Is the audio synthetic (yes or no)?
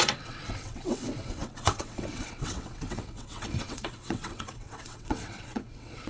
yes